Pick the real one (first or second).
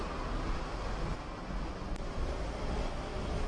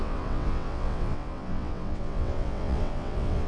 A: first